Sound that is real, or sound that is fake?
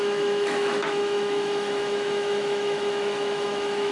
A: fake